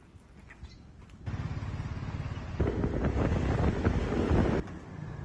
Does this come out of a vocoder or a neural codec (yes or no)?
no